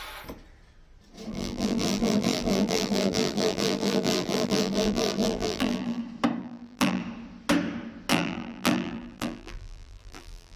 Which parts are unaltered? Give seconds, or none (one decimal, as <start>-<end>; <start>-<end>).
0.0-1.3; 6.0-6.4; 7.0-8.1

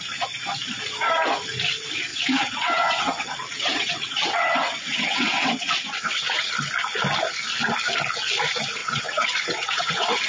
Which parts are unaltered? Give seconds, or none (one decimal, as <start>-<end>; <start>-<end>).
0.0-2.1; 6.5-8.8

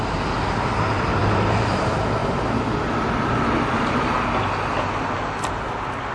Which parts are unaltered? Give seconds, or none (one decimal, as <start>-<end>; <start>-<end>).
0.0-1.2; 1.8-6.1

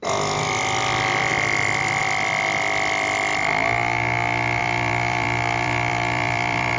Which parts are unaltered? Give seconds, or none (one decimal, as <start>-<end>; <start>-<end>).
3.3-4.6

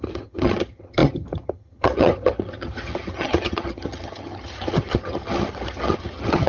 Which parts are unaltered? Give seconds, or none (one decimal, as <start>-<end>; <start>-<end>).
none

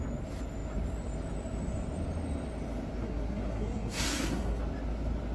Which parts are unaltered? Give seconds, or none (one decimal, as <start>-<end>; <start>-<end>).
0.0-3.0; 4.6-5.3